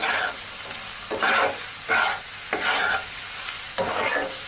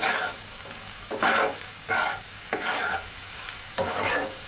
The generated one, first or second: second